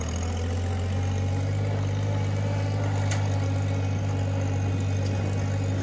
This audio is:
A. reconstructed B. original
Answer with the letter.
B